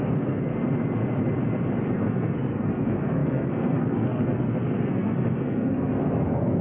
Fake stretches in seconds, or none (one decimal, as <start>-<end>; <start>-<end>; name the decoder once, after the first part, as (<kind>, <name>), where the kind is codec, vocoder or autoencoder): 0.0-0.5 (codec, SNAC); 1.9-6.6